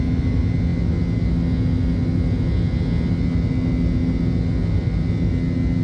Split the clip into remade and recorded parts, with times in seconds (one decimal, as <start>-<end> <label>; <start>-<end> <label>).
0.0-5.8 recorded